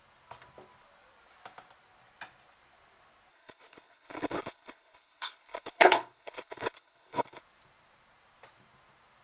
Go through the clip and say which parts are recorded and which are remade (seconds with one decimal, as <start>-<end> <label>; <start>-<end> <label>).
0.0-3.3 recorded; 3.3-7.4 remade; 7.4-9.2 recorded